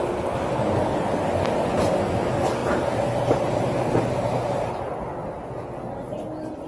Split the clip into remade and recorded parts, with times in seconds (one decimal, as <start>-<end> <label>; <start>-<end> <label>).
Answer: 0.0-2.6 recorded; 2.6-4.8 remade; 4.8-6.7 recorded